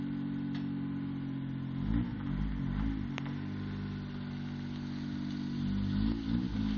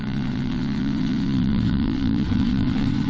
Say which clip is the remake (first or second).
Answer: second